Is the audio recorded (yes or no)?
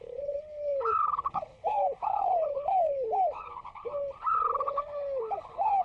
no